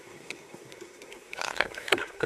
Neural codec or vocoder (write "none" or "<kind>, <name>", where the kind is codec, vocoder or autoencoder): codec, SNAC